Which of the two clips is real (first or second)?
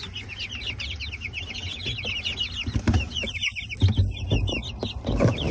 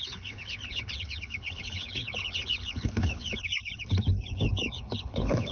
first